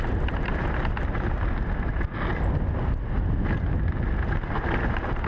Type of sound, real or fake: real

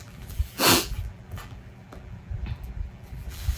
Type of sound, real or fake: fake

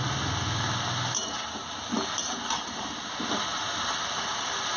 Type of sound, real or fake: real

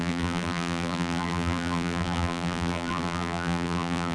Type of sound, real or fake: fake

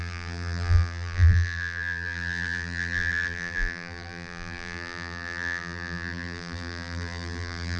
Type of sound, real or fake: fake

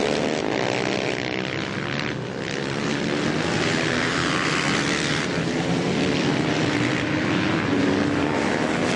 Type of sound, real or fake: fake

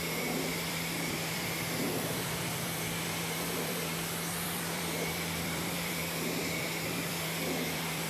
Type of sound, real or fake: fake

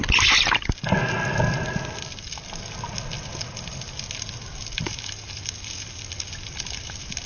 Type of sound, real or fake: real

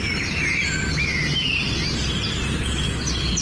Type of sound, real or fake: fake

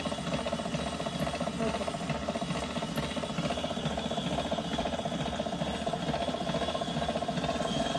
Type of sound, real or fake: real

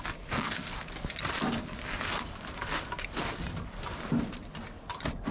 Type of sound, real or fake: real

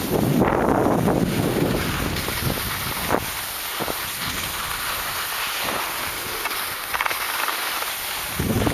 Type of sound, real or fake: real